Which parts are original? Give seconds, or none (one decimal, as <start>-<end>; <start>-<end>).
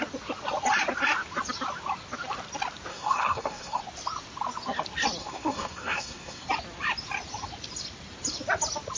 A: 0.0-2.9; 3.8-5.2; 6.5-9.0